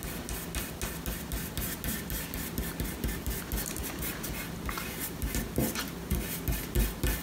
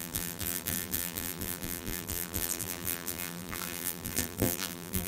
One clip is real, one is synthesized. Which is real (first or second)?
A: first